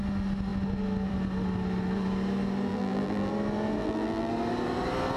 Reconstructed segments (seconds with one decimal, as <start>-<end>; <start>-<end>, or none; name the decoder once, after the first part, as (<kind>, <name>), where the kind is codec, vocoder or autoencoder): 2.7-3.3 (vocoder, BigVGAN v2); 3.8-4.3